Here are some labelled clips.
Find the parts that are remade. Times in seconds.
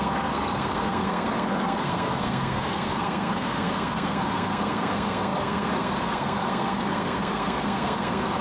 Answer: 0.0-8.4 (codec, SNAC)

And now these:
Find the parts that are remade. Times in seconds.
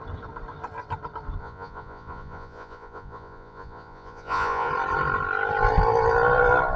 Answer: 1.4-4.7 (vocoder, Vocos)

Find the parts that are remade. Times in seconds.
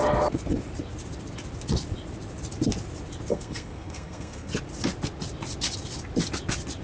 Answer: 3.3-4.5 (codec, SNAC)